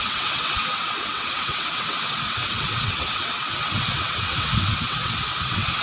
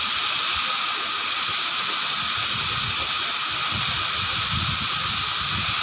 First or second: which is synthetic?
first